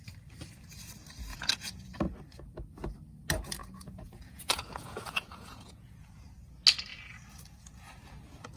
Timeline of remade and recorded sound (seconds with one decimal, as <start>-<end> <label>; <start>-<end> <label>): 0.0-1.3 recorded; 1.3-2.0 remade; 2.0-3.6 recorded; 3.6-6.1 remade; 6.1-8.6 recorded